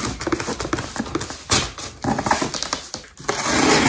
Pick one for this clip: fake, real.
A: real